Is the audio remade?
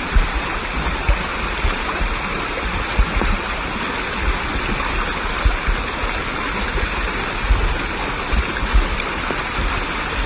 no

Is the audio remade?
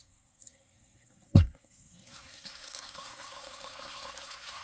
yes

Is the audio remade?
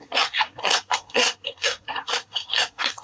yes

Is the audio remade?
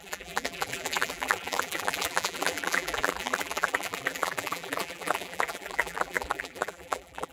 yes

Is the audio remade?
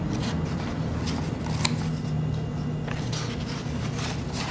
no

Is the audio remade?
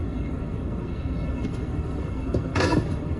yes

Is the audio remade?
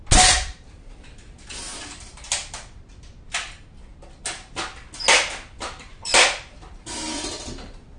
no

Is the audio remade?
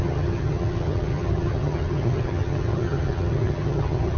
yes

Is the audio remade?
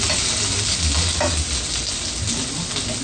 no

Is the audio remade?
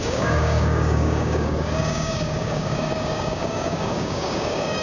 yes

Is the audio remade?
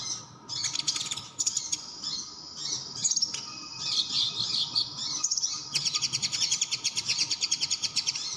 no